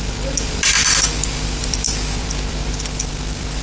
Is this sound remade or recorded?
remade